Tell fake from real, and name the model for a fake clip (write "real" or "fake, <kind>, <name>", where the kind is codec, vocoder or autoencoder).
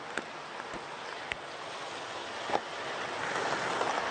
real